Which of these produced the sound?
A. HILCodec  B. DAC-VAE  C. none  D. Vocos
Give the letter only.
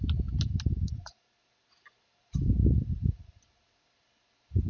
C